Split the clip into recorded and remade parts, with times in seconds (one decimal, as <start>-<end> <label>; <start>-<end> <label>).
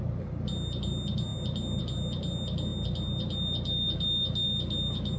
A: 0.0-5.2 recorded